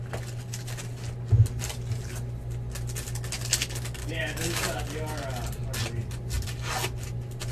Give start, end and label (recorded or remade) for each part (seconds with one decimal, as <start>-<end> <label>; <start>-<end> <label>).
0.0-4.0 recorded; 4.0-4.8 remade; 4.8-7.5 recorded